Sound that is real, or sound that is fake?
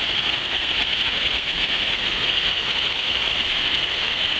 fake